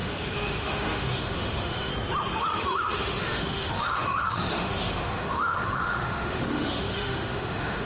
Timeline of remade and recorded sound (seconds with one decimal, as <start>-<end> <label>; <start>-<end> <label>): 0.0-1.9 remade; 1.9-2.4 recorded; 2.4-7.9 remade

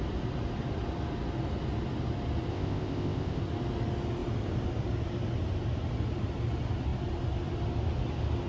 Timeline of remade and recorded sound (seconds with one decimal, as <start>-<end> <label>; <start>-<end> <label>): 0.0-2.5 recorded; 2.5-3.4 remade; 3.4-8.5 recorded